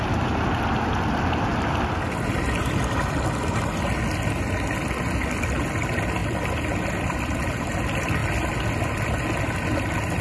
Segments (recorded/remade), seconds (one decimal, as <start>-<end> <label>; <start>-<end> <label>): 0.0-1.5 recorded; 1.5-2.8 remade; 2.8-6.2 recorded; 6.2-7.4 remade; 7.4-10.2 recorded